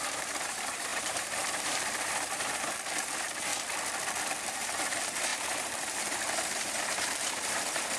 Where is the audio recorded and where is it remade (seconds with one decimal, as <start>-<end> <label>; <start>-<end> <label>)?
0.0-3.5 remade; 3.5-4.5 recorded; 4.5-8.0 remade